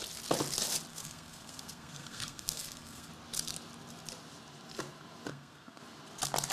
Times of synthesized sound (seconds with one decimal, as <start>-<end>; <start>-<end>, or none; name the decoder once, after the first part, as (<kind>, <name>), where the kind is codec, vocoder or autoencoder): 0.9-3.1 (codec, SNAC); 5.3-5.8